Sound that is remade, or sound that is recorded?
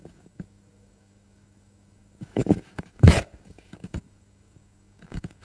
remade